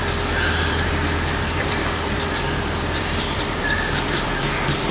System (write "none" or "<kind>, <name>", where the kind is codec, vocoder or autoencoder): vocoder, BigVGAN v2